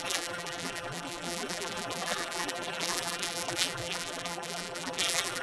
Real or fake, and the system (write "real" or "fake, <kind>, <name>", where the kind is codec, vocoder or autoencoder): fake, vocoder, BigVGAN v2